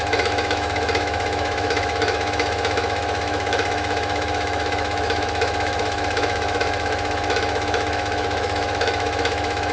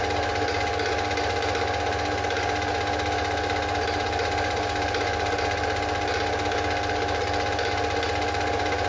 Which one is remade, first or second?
first